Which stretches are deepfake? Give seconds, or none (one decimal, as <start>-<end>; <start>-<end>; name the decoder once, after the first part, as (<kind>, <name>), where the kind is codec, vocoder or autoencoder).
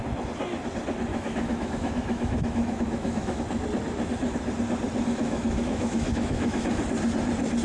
1.1-3.4 (autoencoder, DAC-VAE); 5.2-6.8